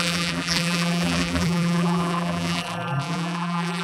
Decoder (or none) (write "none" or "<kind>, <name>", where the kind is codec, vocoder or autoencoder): vocoder, BigVGAN v2